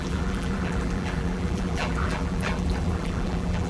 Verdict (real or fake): fake